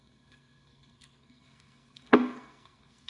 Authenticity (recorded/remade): remade